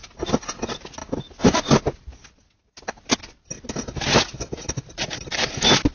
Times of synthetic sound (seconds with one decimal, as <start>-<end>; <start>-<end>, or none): none